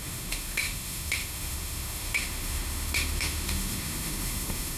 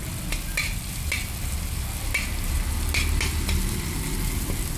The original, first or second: second